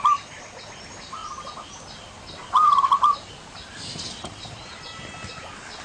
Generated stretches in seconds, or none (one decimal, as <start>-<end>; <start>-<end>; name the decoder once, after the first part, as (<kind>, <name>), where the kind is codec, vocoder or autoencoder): none